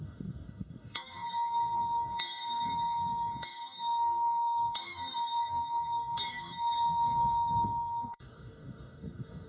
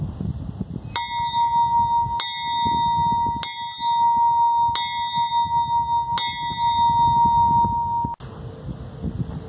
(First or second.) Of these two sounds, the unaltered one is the second